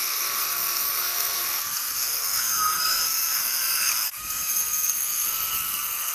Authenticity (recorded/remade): remade